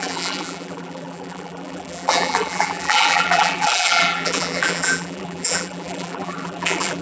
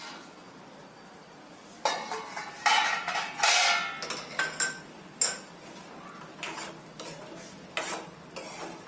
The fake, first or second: first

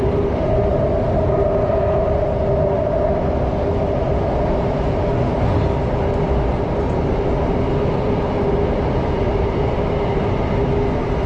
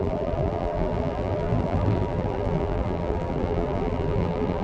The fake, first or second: second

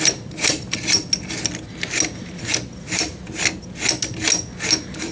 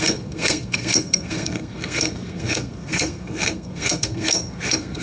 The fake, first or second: second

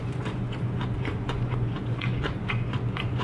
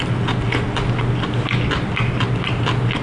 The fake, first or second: first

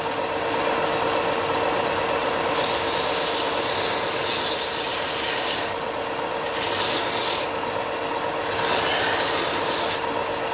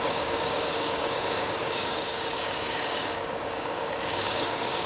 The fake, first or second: second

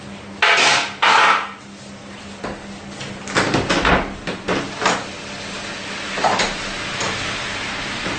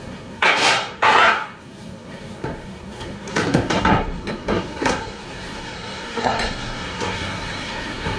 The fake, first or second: second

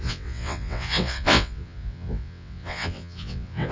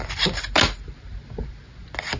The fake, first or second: first